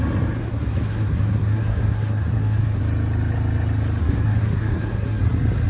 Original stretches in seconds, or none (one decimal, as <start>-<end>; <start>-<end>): 0.0-0.4; 2.8-4.0; 5.2-5.7

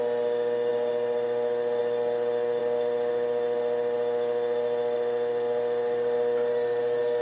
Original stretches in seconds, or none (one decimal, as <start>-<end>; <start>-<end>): 0.0-7.2

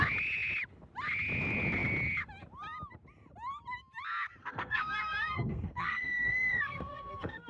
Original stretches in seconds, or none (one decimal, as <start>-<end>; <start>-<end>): 0.0-4.4

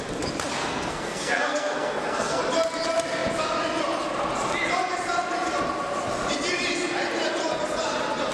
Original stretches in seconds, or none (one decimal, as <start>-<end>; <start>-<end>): 0.0-0.6; 2.4-8.3

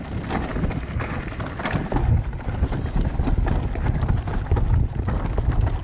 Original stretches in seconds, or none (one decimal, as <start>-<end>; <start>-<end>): 0.0-5.8

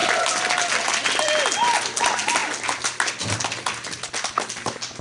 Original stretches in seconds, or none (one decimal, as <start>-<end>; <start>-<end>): 0.0-5.0

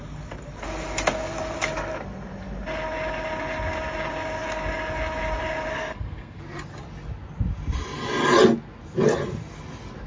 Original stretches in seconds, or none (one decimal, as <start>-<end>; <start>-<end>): 0.0-5.7; 6.4-10.1

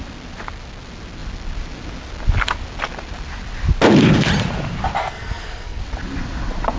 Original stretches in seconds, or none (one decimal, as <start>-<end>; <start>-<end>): 0.0-5.0; 5.8-6.8